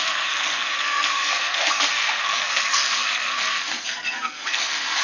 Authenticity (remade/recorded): remade